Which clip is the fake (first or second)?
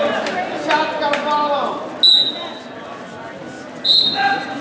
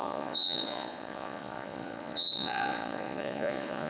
second